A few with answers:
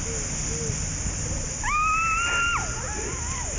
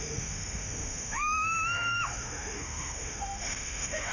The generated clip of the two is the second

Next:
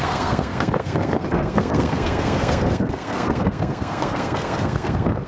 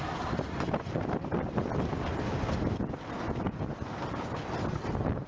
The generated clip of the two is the first